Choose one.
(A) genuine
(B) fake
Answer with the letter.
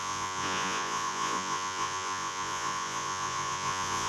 B